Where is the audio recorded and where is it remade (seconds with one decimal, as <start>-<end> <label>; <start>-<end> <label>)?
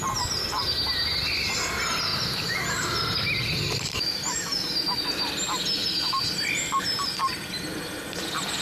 0.0-2.1 recorded; 2.1-4.7 remade; 4.7-8.6 recorded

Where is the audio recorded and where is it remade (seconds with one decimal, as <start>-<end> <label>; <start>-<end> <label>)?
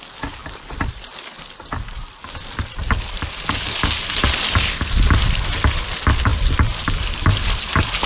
0.0-8.1 recorded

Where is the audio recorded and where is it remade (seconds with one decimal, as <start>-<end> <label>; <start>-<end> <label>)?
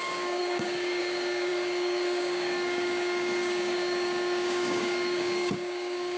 0.0-6.2 remade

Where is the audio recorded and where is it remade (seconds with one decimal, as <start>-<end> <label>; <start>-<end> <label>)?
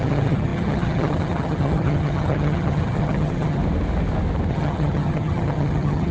0.0-3.6 remade; 3.6-4.5 recorded; 4.5-6.1 remade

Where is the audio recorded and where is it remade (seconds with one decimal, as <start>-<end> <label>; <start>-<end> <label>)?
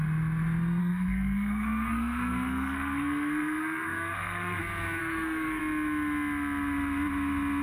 0.0-0.8 recorded; 0.8-4.6 remade; 4.6-5.0 recorded; 5.0-5.6 remade; 5.6-7.6 recorded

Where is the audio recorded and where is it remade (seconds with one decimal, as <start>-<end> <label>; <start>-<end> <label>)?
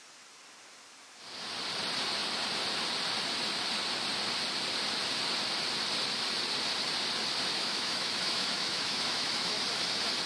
0.0-7.5 recorded; 7.5-9.6 remade; 9.6-10.3 recorded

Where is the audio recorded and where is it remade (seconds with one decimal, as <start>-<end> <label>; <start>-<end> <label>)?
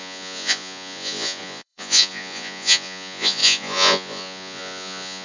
0.0-5.2 remade